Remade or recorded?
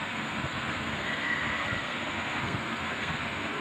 remade